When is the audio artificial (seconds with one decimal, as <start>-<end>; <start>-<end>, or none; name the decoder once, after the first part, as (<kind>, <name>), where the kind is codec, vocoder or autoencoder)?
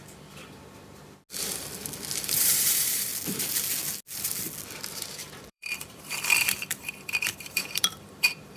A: 0.0-0.4 (vocoder, BigVGAN v2); 2.2-3.1; 4.9-8.6